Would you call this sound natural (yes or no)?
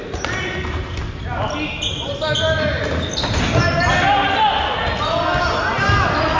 yes